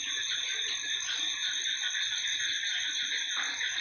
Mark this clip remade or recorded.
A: recorded